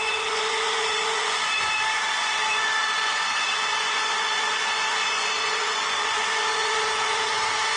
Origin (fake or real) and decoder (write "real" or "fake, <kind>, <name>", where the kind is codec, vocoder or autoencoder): fake, vocoder, Vocos